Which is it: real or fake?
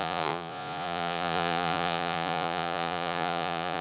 fake